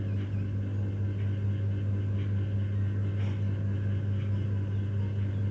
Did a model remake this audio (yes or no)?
no